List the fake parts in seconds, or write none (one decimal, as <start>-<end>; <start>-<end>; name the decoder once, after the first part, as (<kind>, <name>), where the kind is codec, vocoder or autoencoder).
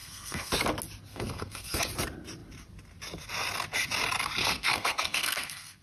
0.0-0.5 (codec, SNAC); 1.1-1.8; 4.4-5.8